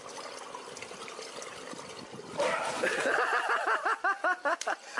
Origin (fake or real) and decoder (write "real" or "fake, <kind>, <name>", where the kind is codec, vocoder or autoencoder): real